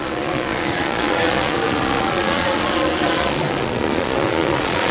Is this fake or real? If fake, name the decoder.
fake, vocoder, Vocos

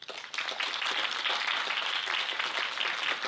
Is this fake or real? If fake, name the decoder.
real